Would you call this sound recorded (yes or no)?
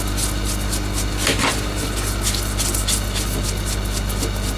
yes